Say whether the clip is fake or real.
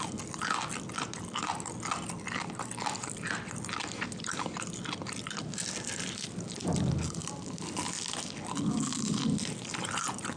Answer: real